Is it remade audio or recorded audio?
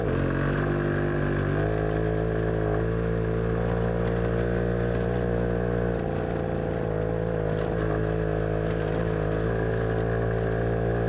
recorded